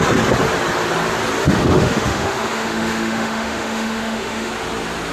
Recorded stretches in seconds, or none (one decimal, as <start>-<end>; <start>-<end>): 0.0-1.4; 4.5-5.1